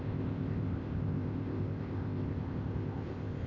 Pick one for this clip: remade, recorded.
remade